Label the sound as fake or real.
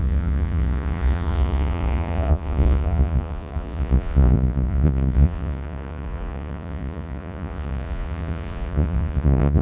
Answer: fake